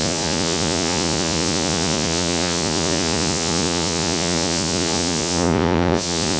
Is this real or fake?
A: fake